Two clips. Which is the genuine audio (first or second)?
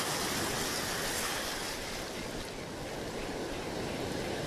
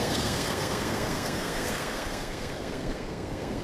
first